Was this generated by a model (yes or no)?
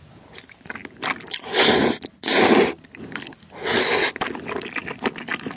no